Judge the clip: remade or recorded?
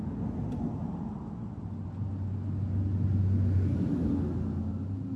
recorded